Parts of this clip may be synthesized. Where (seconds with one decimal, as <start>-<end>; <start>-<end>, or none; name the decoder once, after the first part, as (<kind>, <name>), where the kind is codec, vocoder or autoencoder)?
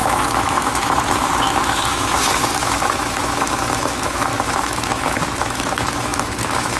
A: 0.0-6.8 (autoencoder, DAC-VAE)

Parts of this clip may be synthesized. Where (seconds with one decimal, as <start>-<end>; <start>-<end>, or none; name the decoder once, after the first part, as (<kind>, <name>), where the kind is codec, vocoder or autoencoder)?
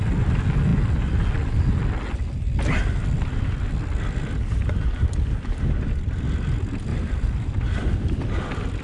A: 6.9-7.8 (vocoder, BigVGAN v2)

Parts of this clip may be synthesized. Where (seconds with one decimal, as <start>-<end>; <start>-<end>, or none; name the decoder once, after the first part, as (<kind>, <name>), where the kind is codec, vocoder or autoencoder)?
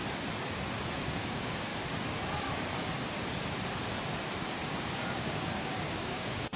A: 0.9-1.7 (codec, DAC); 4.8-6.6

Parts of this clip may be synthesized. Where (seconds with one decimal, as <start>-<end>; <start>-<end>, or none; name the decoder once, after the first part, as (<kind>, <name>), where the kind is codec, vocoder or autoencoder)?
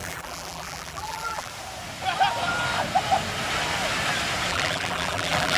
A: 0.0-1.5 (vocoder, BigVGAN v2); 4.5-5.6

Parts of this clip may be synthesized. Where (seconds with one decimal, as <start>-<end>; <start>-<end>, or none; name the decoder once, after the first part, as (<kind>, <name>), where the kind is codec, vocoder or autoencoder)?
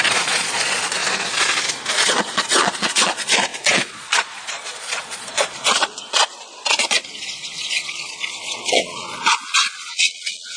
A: 0.0-1.0 (vocoder, Vocos); 1.9-10.6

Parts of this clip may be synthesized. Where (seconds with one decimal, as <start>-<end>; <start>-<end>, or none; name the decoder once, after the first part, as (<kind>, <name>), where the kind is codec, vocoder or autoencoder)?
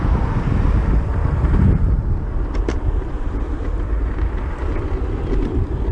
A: 1.1-4.6 (vocoder, BigVGAN v2)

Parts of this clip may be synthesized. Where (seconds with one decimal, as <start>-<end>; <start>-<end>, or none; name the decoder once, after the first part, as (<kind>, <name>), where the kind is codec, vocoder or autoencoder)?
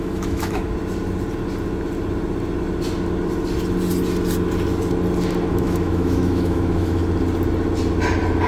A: 0.0-0.7 (autoencoder, DAC-VAE); 5.5-7.0